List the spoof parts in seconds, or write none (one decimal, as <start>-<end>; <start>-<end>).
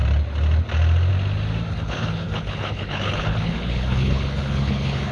1.7-5.1